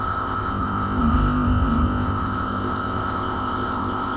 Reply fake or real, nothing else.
fake